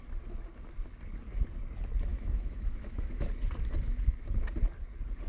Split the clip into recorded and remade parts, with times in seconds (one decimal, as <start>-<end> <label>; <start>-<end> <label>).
0.0-2.1 recorded; 2.1-3.3 remade; 3.3-5.3 recorded